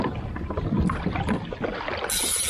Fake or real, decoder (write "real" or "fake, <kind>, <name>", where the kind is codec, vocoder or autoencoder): real